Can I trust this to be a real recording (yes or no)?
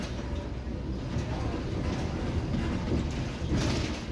yes